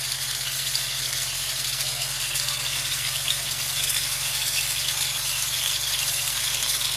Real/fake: fake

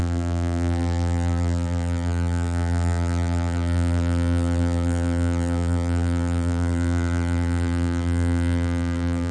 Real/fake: fake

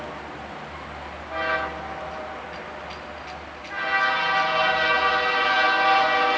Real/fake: real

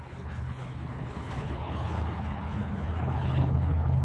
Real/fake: fake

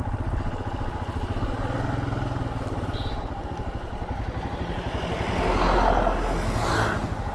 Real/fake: real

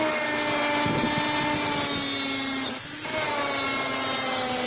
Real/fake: real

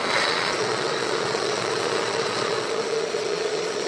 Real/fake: fake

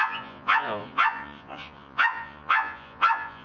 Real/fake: fake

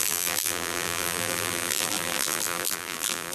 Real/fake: fake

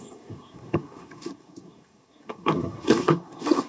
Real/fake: fake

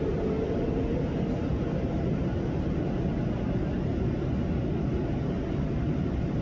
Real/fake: real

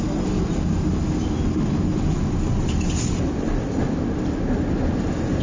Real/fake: real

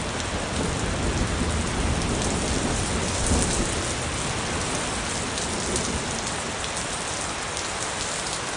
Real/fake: real